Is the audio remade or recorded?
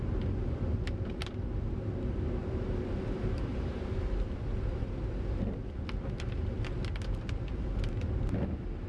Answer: recorded